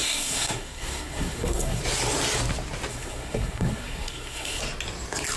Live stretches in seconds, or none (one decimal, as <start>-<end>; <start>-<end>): 1.8-2.9; 4.6-5.4